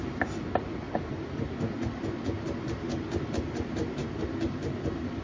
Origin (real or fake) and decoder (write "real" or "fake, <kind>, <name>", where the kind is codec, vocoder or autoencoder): real